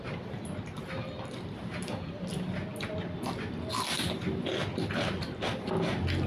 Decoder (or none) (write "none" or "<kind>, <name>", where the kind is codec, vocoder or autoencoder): none